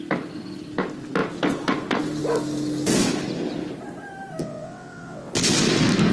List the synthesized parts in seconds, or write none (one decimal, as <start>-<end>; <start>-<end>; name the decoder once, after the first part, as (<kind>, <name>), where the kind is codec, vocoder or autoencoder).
4.4-5.3 (vocoder, WaveNeXt)